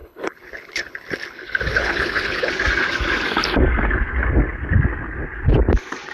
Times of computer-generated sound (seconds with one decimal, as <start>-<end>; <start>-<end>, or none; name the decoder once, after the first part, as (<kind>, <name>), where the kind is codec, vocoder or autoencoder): 0.0-2.5 (codec, HILCodec)